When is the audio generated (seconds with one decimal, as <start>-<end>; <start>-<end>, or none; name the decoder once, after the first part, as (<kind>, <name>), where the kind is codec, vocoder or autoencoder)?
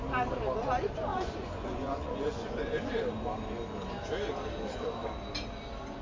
1.1-2.9 (vocoder, Vocos)